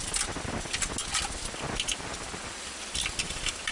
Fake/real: real